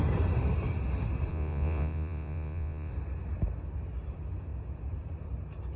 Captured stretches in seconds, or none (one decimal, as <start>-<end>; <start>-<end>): 0.0-1.3; 2.9-5.8